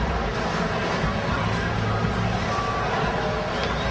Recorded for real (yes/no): yes